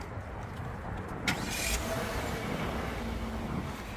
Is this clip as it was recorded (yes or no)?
yes